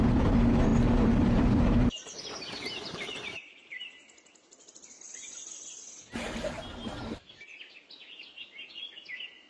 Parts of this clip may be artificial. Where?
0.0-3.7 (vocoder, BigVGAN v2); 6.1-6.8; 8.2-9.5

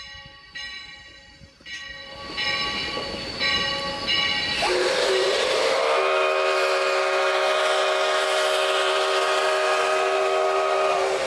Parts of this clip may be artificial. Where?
2.0-3.7 (vocoder, BigVGAN v2)

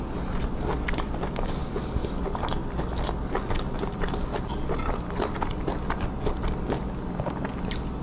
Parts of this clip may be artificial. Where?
none

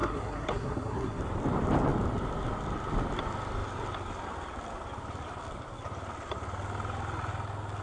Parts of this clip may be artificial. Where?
0.0-1.2 (codec, SNAC)

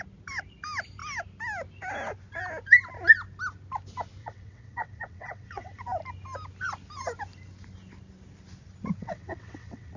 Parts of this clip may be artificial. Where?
4.2-5.8 (vocoder, WaveNeXt); 9.0-10.0

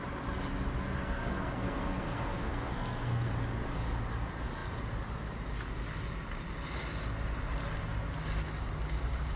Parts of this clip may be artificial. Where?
1.0-3.3 (codec, SNAC)

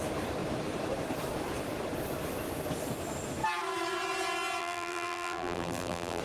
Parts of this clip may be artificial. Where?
4.6-6.2 (vocoder, BigVGAN v2)

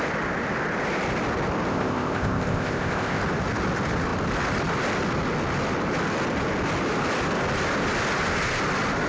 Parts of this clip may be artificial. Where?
1.7-3.2 (codec, ZipCodec)